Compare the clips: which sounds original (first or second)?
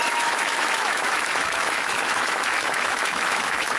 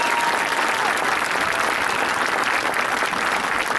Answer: second